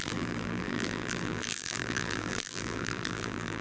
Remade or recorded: remade